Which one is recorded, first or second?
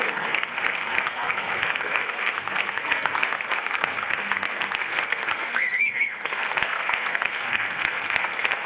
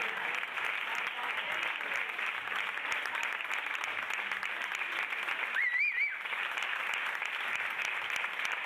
second